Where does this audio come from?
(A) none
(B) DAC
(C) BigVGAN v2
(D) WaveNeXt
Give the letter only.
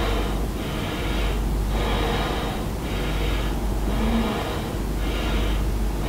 A